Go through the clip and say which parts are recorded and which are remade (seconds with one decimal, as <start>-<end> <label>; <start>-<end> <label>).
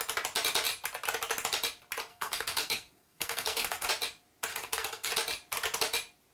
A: 0.0-2.1 recorded; 2.1-3.9 remade; 3.9-4.5 recorded; 4.5-5.1 remade; 5.1-6.3 recorded